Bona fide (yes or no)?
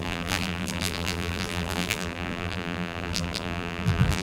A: no